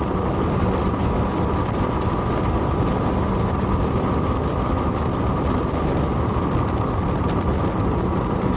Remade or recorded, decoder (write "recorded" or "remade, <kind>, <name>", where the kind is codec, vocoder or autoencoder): recorded